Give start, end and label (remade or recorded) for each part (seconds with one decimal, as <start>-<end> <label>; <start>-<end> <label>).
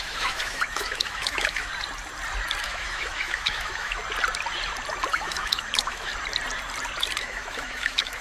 0.0-1.7 remade; 1.7-2.6 recorded; 2.6-4.0 remade; 4.0-5.1 recorded; 5.1-6.1 remade; 6.1-7.2 recorded; 7.2-8.2 remade